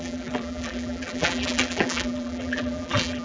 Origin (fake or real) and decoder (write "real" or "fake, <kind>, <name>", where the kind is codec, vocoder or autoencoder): fake, vocoder, BigVGAN v2